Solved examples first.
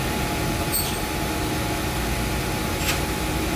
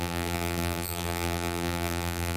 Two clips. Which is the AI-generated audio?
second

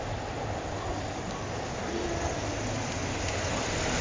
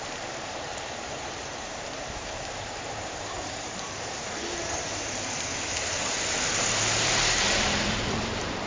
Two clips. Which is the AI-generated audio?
second